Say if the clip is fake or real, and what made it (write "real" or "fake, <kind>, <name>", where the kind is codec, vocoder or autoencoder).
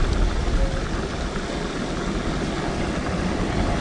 real